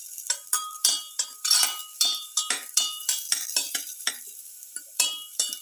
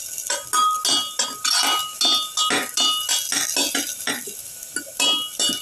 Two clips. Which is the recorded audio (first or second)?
second